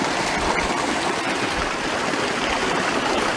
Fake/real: real